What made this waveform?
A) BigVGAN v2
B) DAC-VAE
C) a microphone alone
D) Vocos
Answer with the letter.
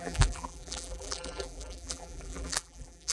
A